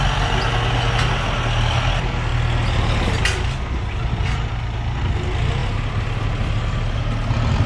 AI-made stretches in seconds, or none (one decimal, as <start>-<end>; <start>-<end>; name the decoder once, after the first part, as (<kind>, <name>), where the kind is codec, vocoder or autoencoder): none